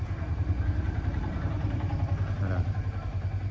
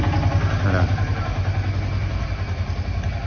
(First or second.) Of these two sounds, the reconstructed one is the first